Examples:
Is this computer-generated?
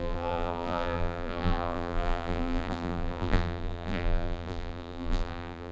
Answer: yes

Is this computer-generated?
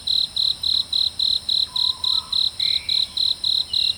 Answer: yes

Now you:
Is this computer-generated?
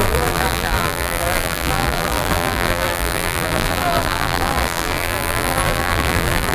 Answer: yes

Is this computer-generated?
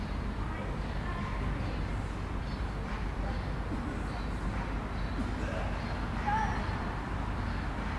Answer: no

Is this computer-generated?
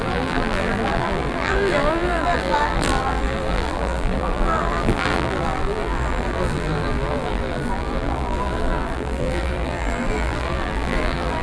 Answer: yes